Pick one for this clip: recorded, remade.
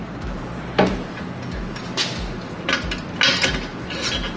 recorded